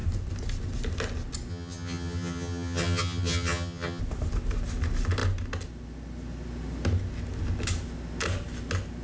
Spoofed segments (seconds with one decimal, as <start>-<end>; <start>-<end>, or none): 1.5-4.0